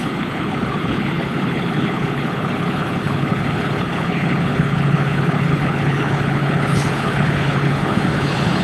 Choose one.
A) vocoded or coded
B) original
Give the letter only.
A